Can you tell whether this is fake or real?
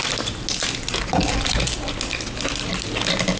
real